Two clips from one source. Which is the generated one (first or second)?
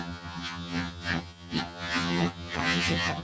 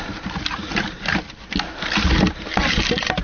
first